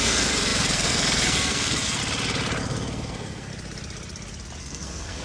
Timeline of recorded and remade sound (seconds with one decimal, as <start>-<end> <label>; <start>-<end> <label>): 0.0-2.0 remade; 2.0-2.6 recorded; 2.6-3.5 remade; 3.5-4.6 recorded; 4.6-5.2 remade

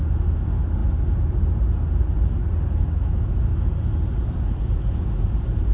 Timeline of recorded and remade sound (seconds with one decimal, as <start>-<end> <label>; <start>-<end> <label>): 0.0-5.7 recorded

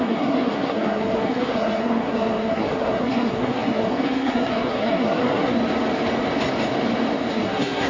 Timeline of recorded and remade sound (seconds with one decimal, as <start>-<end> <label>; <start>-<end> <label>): 0.0-5.6 remade; 5.6-7.3 recorded; 7.3-7.9 remade

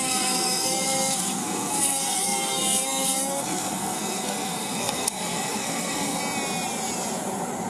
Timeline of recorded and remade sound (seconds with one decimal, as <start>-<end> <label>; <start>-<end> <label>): 0.0-6.2 remade; 6.2-7.7 recorded

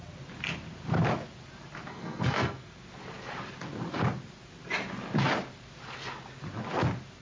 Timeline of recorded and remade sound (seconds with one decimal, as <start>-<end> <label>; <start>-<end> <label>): 0.0-1.9 recorded; 1.9-2.7 remade; 2.7-7.2 recorded

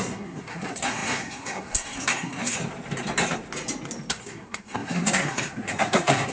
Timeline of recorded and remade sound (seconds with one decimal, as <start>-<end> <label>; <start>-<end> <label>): 0.0-2.6 remade; 2.6-4.1 recorded; 4.1-6.3 remade

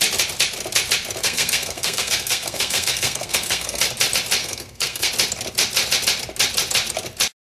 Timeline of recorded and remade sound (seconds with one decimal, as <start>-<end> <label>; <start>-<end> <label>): 0.0-1.2 recorded; 1.2-3.8 remade; 3.8-4.4 recorded; 4.4-5.1 remade; 5.1-7.6 recorded